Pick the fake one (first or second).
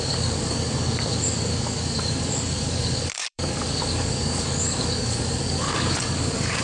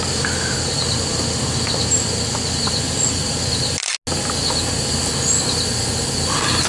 first